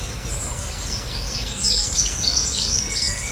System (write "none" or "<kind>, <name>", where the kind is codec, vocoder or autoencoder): codec, SNAC